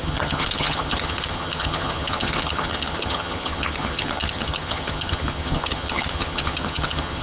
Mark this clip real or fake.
fake